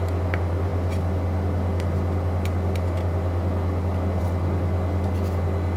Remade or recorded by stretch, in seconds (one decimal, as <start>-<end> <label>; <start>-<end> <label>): 0.0-5.8 recorded